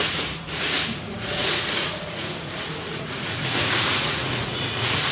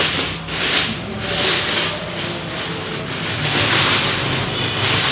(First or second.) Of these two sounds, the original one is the second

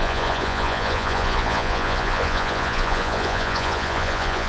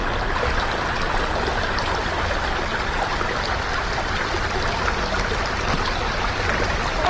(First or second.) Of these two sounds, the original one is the second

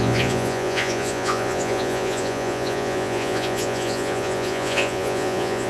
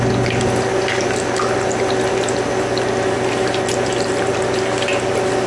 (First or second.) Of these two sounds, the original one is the second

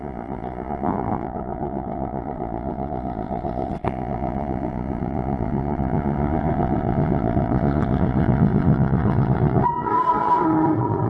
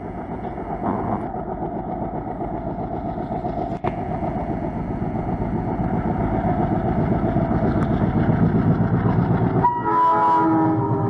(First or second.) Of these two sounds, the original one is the second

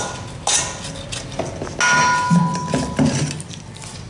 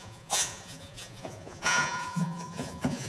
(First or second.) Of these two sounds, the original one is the first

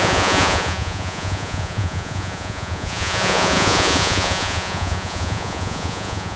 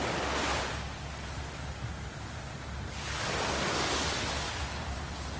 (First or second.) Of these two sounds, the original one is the second